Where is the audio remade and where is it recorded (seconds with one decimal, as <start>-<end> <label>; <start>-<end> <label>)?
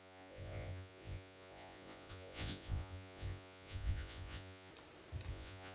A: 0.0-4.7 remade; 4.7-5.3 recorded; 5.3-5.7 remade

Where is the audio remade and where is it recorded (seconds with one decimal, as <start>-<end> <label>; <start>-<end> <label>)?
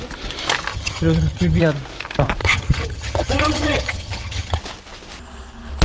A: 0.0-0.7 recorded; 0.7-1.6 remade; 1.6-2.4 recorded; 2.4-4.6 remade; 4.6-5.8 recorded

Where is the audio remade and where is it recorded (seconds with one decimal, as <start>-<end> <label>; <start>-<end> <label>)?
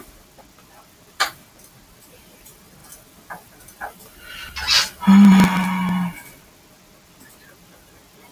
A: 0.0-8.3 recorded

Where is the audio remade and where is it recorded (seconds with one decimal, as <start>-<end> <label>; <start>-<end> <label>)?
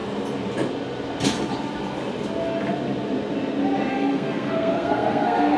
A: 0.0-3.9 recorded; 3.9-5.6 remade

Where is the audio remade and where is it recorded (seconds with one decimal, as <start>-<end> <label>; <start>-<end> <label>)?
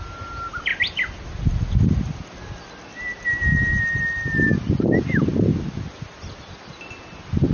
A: 0.0-7.5 recorded